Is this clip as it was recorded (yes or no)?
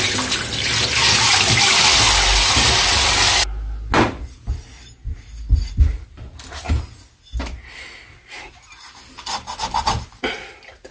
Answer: yes